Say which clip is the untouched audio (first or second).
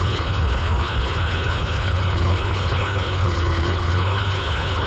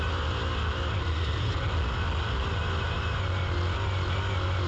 second